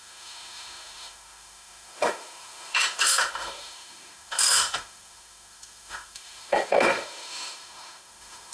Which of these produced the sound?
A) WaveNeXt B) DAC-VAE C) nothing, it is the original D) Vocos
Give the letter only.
B